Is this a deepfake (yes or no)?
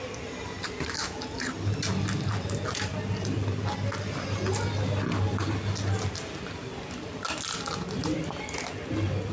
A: no